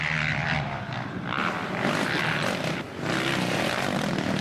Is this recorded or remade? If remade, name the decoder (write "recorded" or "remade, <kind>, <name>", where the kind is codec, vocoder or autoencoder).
recorded